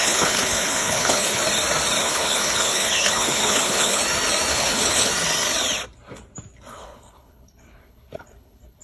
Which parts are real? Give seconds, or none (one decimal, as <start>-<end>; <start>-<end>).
1.4-2.0; 4.0-4.5; 5.1-6.7

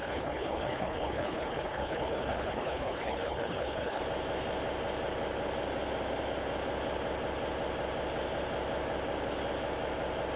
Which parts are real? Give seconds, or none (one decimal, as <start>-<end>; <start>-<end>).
4.0-10.4